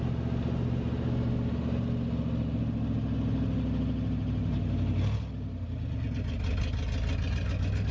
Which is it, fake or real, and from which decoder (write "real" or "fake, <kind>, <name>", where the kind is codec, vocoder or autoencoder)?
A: real